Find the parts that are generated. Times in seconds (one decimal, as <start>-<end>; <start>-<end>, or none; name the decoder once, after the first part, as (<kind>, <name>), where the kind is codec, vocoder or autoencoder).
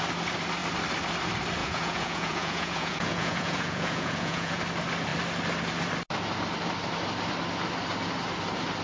1.6-4.6 (vocoder, Vocos)